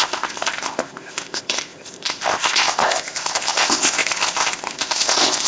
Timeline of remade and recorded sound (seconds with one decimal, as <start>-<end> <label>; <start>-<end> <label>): 0.0-5.5 remade